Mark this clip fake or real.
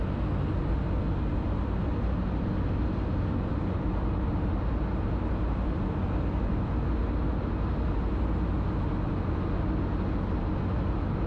real